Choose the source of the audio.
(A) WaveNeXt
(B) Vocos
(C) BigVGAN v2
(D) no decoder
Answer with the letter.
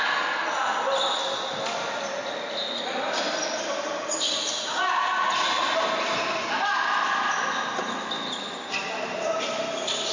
D